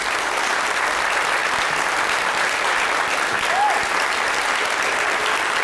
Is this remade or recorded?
recorded